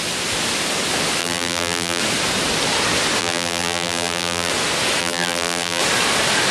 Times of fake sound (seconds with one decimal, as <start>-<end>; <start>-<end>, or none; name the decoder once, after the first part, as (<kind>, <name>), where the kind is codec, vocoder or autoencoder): 1.2-2.0 (vocoder, BigVGAN v2); 3.2-4.5; 5.0-5.8